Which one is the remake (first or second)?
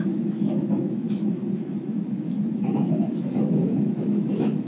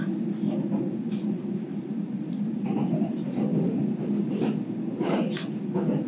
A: first